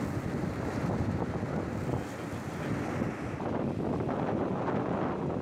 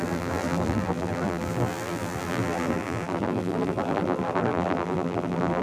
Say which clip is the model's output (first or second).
second